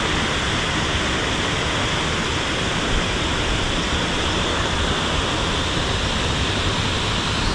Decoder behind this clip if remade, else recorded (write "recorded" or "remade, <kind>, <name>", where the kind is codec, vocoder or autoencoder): recorded